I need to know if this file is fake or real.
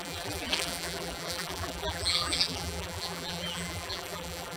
fake